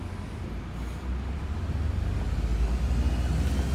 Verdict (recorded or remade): recorded